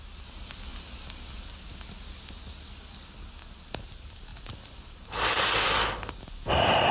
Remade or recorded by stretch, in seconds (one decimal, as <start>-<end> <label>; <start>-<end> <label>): 0.0-6.9 recorded